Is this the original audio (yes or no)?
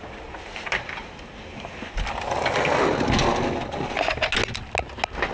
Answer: yes